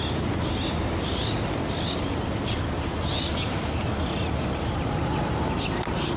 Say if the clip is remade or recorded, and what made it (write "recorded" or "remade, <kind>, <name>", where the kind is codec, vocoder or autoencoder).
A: recorded